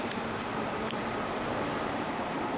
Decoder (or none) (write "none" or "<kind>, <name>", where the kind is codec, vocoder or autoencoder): vocoder, BigVGAN v2